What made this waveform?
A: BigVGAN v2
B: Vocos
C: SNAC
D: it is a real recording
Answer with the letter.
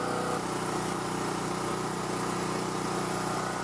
D